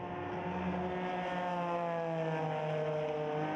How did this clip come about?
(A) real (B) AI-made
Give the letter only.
A